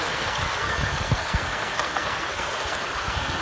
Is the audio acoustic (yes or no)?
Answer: no